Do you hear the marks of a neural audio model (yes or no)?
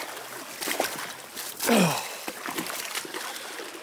no